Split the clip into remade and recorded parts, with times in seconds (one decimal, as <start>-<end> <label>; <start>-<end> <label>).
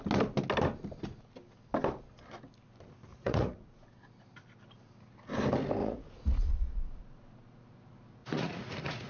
0.0-3.1 recorded; 3.1-3.9 remade; 3.9-5.8 recorded; 5.8-7.0 remade; 7.0-8.2 recorded; 8.2-9.1 remade